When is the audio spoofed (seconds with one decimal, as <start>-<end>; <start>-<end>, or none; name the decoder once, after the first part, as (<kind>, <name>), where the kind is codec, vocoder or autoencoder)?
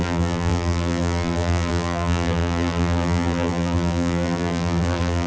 0.0-5.3 (vocoder, BigVGAN v2)